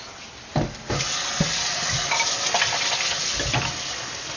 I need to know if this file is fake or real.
real